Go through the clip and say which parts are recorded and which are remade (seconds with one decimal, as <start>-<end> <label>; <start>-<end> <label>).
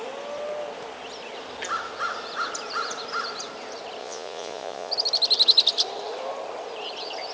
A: 0.0-4.0 recorded; 4.0-4.9 remade; 4.9-7.3 recorded